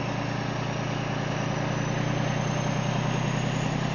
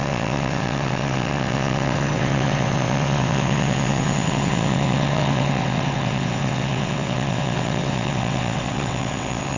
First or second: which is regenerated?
second